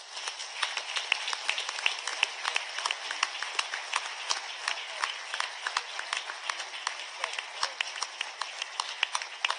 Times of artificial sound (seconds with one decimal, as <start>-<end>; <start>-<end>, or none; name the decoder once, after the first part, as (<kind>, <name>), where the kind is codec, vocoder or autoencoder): none